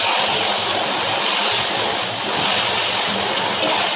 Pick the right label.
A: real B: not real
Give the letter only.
A